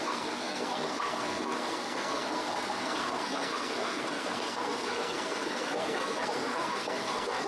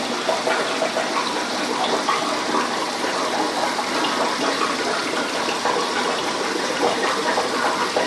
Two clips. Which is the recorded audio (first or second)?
second